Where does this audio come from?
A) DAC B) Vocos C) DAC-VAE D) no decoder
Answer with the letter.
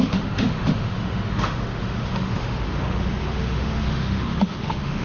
C